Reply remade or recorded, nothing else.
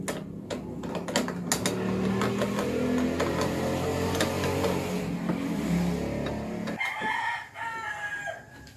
recorded